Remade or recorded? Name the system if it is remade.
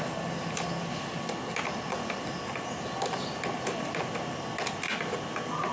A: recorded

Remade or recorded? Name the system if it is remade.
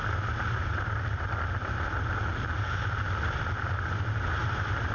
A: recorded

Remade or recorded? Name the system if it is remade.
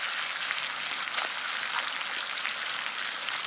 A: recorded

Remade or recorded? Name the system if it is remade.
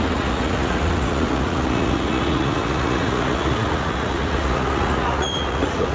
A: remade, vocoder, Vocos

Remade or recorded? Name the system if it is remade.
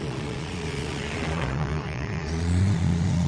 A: remade, vocoder, Vocos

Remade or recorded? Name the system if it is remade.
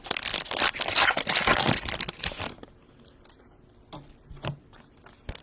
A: recorded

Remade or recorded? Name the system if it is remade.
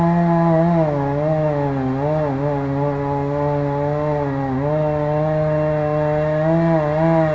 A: recorded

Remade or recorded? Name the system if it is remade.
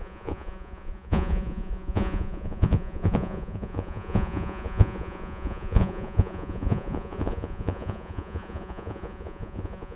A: remade, vocoder, Vocos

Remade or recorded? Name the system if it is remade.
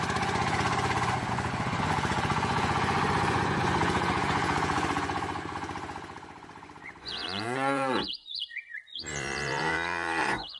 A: remade, vocoder, Vocos